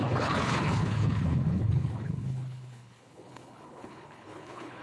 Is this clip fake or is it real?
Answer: fake